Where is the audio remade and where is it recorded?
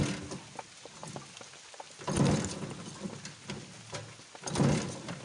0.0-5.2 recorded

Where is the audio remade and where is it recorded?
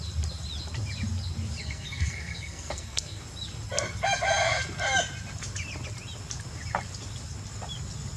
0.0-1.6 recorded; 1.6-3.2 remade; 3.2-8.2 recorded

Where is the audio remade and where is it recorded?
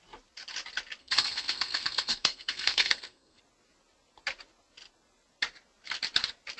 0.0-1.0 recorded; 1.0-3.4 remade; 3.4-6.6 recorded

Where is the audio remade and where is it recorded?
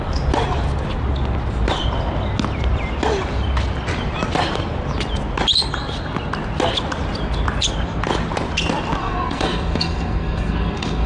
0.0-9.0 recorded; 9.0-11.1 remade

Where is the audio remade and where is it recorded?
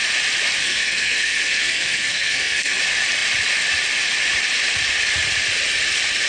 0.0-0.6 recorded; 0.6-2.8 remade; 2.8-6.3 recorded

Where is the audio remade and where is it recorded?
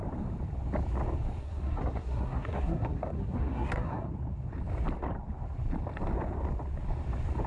0.0-1.4 recorded; 1.4-4.1 remade; 4.1-7.5 recorded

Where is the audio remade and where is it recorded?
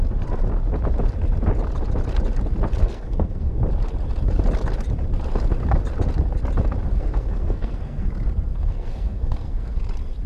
0.0-2.8 recorded; 2.8-3.6 remade; 3.6-6.9 recorded; 6.9-8.1 remade; 8.1-8.5 recorded; 8.5-9.8 remade; 9.8-10.3 recorded